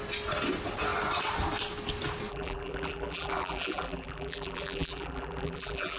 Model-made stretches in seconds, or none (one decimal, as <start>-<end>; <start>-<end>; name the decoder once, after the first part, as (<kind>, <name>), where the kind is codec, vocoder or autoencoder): 2.3-6.0 (vocoder, BigVGAN v2)